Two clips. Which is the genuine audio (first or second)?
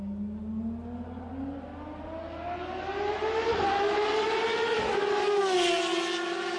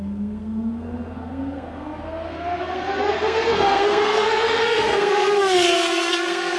first